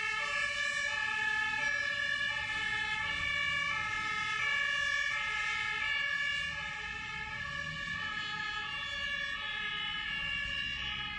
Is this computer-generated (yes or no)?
no